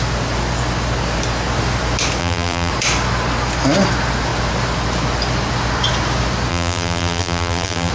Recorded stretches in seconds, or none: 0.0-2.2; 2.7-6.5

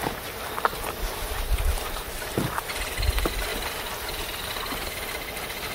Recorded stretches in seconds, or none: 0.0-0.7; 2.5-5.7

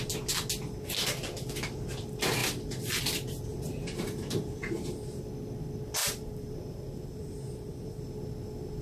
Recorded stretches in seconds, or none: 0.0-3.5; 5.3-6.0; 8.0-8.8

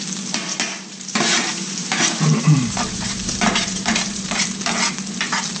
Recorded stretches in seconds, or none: 0.0-0.9; 4.3-5.6

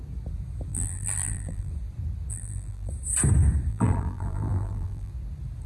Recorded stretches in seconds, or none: 0.0-0.7; 1.7-2.3; 2.9-3.7; 5.1-5.7

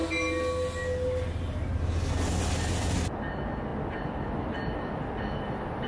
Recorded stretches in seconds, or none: 0.0-5.9

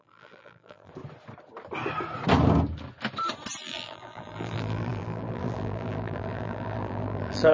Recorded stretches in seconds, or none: 0.9-3.6

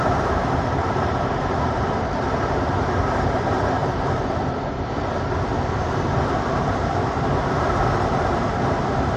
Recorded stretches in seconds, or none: none